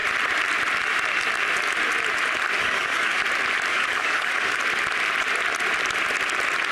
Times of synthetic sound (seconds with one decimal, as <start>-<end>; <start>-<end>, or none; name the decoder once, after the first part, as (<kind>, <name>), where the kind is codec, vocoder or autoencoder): 2.6-3.2 (codec, DAC); 3.7-4.6